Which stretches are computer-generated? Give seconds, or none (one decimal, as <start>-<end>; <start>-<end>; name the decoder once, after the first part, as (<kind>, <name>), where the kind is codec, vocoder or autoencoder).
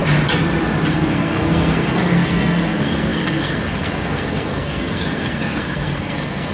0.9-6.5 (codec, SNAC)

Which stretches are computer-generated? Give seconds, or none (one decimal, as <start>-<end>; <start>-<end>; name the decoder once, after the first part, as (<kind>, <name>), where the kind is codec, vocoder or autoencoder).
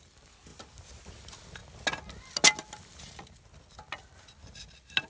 none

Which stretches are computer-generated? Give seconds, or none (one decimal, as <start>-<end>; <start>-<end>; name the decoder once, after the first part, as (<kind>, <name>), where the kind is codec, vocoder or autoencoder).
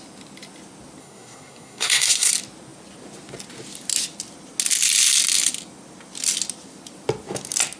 1.0-2.3 (codec, SNAC)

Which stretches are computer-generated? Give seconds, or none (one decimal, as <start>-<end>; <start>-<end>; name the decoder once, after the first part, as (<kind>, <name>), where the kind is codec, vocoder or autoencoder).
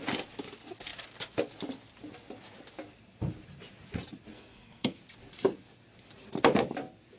4.3-5.0 (codec, SNAC)